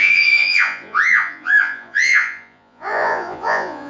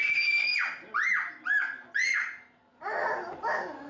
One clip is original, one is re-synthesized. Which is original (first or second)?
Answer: second